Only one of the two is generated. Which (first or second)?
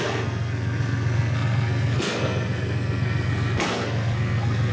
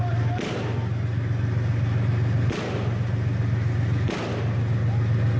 first